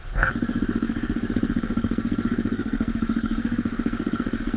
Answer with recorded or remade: remade